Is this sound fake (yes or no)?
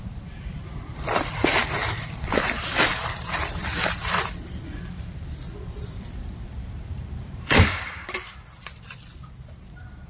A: yes